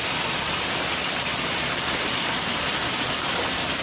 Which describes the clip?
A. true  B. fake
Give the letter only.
B